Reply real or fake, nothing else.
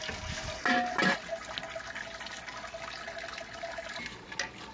real